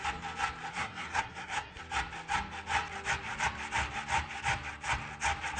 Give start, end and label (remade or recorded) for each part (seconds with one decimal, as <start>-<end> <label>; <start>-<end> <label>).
0.0-0.7 recorded; 0.7-1.8 remade; 1.8-5.6 recorded